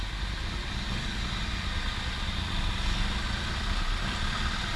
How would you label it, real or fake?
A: real